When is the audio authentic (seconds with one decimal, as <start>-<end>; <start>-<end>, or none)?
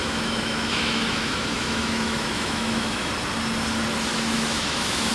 3.1-4.1